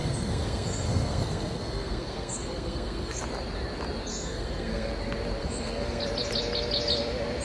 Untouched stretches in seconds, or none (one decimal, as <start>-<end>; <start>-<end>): 3.2-4.1; 4.9-5.4; 6.0-7.4